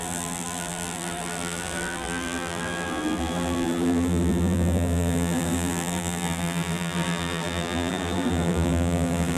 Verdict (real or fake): fake